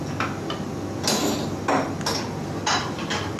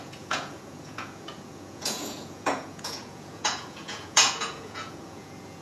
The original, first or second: first